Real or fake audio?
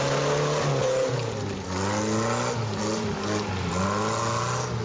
real